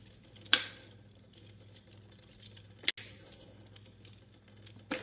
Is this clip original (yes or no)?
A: yes